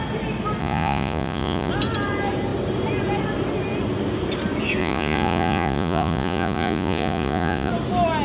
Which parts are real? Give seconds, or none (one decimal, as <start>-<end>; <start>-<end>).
0.0-0.6; 1.7-4.8; 7.7-8.2